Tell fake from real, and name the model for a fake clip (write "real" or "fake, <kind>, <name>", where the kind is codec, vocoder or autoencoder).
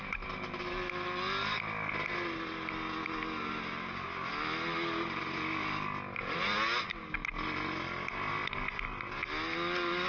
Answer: real